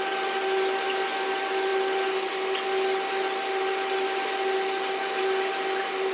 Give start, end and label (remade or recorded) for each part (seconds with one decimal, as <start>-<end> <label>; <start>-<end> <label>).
0.0-6.1 recorded